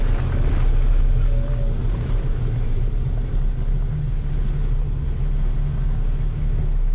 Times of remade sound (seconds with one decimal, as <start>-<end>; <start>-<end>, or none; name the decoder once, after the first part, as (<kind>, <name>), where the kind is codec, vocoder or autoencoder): 1.8-3.3 (vocoder, BigVGAN v2)